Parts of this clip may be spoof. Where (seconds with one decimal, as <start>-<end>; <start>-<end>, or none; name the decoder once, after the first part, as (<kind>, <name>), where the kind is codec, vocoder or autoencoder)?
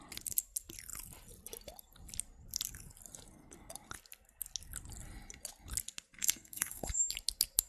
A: 6.2-7.0 (codec, SNAC)